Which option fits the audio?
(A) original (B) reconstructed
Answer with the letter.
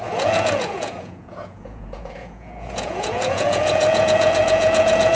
B